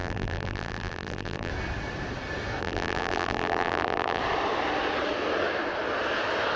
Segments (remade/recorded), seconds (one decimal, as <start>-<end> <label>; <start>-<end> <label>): 0.0-1.5 remade; 1.5-2.6 recorded; 2.6-4.2 remade; 4.2-6.6 recorded